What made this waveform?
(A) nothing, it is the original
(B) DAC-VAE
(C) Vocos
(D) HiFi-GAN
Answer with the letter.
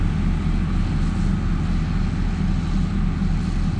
A